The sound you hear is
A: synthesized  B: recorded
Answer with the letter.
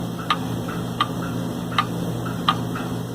B